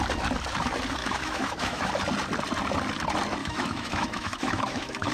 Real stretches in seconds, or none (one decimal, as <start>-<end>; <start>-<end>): 0.0-1.0; 1.9-3.4